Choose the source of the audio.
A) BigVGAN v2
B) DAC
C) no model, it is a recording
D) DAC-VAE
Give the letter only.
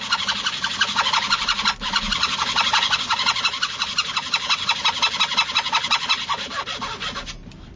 C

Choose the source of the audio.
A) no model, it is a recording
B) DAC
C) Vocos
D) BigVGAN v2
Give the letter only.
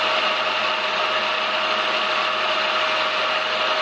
A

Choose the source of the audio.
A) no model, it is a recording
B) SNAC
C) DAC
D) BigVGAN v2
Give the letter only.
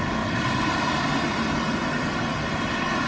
A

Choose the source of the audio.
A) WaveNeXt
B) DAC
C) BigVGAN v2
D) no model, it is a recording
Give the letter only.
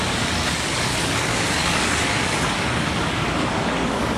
B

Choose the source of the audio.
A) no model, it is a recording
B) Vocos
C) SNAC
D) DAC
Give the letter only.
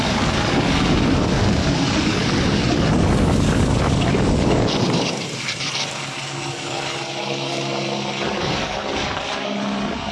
D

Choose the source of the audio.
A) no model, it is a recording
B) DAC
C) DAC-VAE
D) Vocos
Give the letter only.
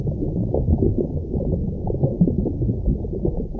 A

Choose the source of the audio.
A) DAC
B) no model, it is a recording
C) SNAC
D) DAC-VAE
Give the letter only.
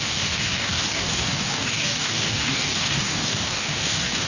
A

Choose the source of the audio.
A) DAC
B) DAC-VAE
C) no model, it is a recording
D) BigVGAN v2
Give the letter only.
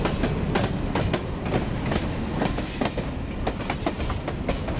C